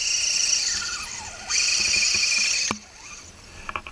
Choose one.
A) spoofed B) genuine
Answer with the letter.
B